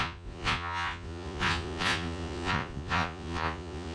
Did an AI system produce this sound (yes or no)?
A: yes